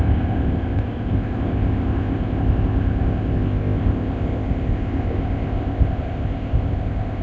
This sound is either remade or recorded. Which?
remade